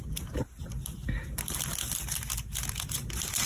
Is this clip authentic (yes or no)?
yes